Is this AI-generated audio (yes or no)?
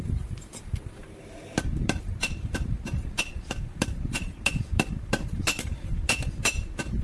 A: yes